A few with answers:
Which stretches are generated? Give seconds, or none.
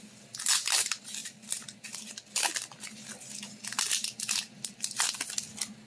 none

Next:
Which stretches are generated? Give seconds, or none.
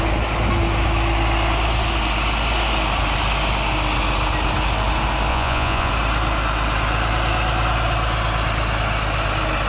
5.3-5.9 (vocoder, Vocos)